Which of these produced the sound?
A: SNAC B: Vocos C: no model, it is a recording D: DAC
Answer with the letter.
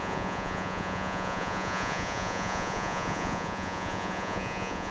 B